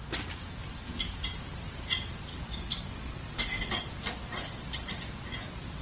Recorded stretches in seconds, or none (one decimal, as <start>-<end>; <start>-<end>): 0.0-2.3; 3.8-5.8